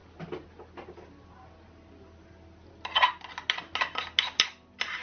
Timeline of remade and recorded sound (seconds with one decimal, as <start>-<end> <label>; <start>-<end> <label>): 0.0-5.0 recorded